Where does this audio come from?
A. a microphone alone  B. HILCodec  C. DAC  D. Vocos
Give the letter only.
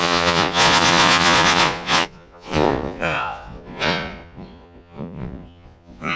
D